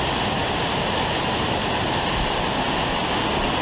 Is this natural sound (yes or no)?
yes